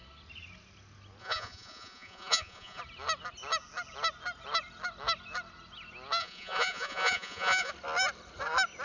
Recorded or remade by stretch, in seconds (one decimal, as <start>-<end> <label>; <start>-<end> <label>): 0.0-1.2 recorded; 1.2-2.8 remade; 2.8-6.2 recorded; 6.2-7.7 remade; 7.7-8.8 recorded